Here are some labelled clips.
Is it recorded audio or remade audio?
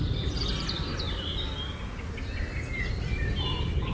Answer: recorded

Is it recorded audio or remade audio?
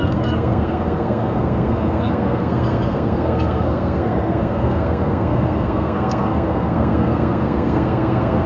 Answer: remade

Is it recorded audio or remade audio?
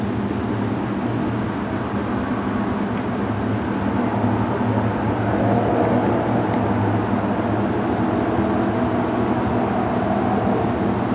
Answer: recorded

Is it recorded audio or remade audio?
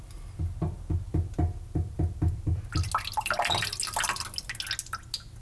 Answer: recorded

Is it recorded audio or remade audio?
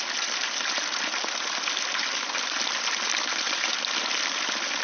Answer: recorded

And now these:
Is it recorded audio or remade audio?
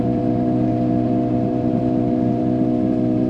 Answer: remade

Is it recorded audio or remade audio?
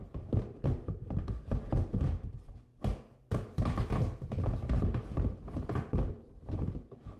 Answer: recorded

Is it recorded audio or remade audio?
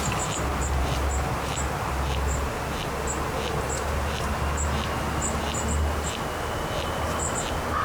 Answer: recorded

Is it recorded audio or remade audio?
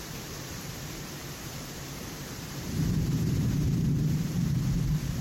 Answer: remade